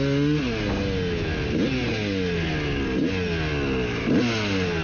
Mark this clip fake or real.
real